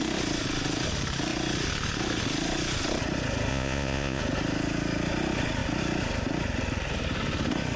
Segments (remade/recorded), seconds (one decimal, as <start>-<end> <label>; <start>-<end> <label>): 0.0-3.5 recorded; 3.5-4.2 remade; 4.2-7.8 recorded